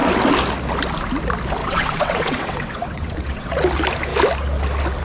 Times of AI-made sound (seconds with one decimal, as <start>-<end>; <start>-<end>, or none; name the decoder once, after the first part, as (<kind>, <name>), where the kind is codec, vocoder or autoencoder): 1.6-3.5 (vocoder, WaveNeXt)